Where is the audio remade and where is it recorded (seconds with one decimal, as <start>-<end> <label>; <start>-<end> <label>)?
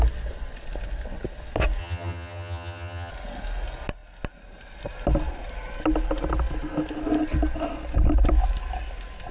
0.0-1.8 recorded; 1.8-3.1 remade; 3.1-9.3 recorded